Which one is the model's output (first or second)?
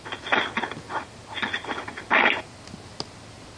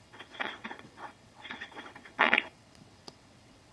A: second